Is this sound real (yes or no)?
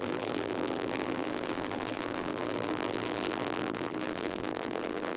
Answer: no